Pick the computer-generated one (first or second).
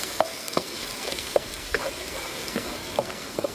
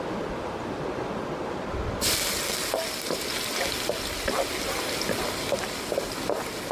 first